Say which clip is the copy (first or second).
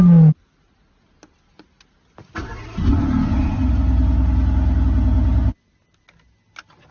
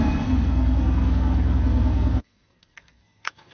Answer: second